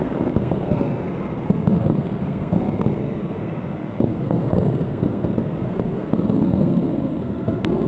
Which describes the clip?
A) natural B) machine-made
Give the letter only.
B